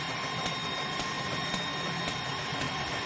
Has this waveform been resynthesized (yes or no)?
no